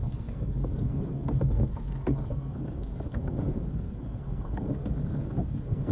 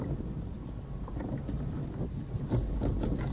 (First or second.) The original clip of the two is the second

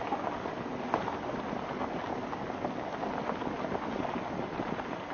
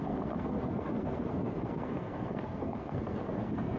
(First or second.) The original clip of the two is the first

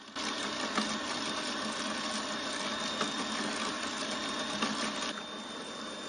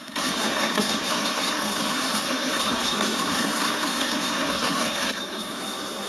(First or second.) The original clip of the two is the first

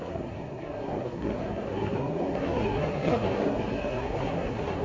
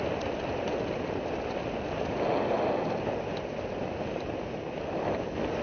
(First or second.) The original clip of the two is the second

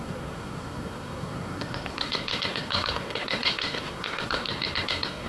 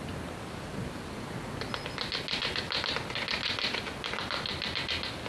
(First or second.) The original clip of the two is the second